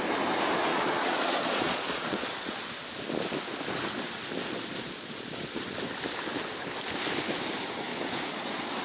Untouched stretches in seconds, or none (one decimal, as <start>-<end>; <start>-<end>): 0.0-0.7; 3.0-4.4; 5.6-7.9